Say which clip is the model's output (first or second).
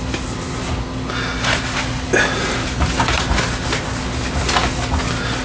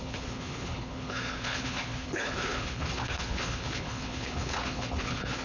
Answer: second